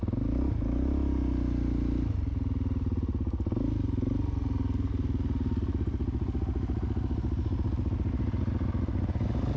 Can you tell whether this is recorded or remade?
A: recorded